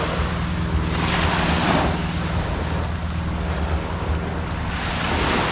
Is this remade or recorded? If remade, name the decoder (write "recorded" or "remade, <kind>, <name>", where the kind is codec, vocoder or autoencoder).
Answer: recorded